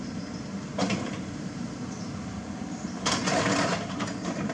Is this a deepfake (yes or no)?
yes